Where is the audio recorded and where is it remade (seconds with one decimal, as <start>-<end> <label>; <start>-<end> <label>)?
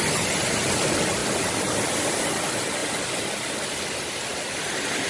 0.0-5.1 recorded